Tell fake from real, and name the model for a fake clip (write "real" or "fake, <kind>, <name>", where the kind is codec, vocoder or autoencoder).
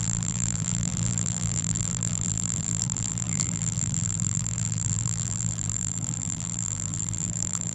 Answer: fake, vocoder, BigVGAN v2